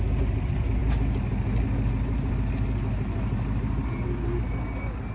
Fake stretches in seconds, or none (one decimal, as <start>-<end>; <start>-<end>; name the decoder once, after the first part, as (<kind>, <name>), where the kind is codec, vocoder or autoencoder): none